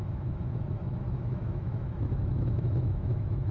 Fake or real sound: fake